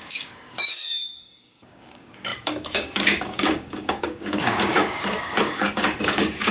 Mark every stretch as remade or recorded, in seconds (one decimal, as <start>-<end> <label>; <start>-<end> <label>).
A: 0.0-6.5 remade